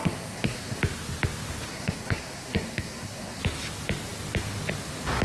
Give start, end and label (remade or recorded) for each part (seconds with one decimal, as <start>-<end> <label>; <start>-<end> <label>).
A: 0.0-0.8 remade; 0.8-1.7 recorded; 1.7-3.4 remade; 3.4-5.2 recorded